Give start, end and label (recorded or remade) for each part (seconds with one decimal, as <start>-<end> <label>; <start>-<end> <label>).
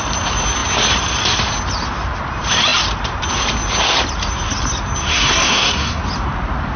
0.0-5.1 recorded; 5.1-6.0 remade; 6.0-6.8 recorded